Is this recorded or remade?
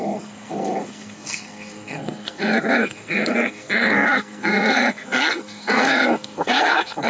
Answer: remade